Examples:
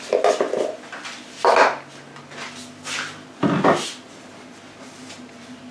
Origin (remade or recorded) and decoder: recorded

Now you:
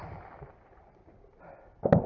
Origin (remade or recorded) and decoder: recorded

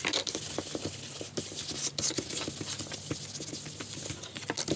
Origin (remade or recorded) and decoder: recorded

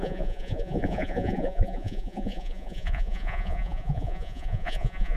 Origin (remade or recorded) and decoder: remade, vocoder, Vocos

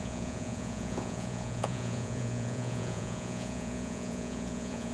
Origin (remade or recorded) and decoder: remade, vocoder, Vocos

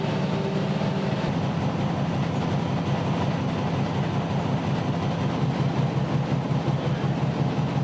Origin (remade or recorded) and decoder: recorded